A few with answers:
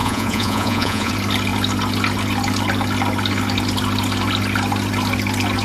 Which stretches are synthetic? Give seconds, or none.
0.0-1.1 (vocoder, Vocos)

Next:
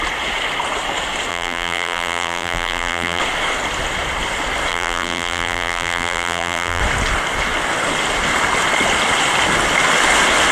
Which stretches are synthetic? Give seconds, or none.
1.3-3.2 (vocoder, BigVGAN v2); 4.7-6.8

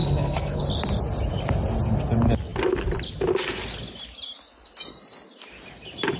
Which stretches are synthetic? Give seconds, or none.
0.0-0.6 (codec, SNAC)

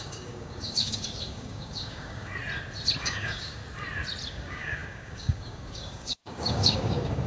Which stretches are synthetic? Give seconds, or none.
0.0-2.3 (codec, DAC); 3.0-3.6; 4.3-7.3

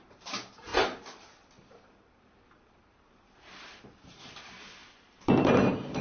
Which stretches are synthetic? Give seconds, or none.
0.0-0.7 (vocoder, BigVGAN v2); 1.7-6.0